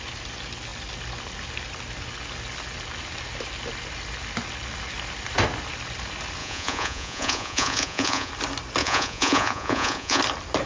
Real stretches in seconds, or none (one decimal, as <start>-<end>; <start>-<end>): 0.0-6.4; 8.3-8.8; 10.2-10.7